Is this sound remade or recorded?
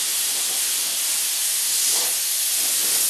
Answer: recorded